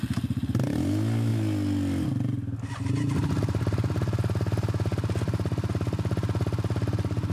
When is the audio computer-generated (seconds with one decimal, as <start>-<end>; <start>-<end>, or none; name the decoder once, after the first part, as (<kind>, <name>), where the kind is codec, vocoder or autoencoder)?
none